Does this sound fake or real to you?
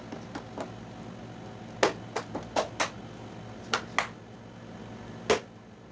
real